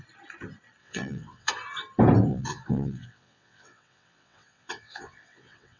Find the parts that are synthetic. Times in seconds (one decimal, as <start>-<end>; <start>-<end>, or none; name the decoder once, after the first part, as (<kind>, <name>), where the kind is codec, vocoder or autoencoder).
0.8-1.5 (vocoder, WaveNeXt); 2.3-5.8